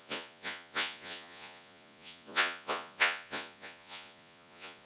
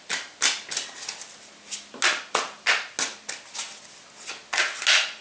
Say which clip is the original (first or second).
second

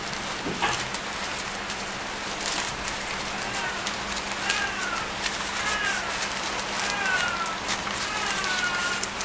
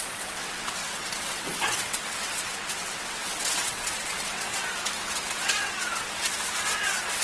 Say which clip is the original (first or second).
first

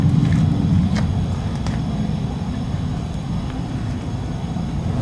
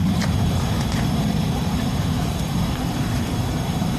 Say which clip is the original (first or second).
first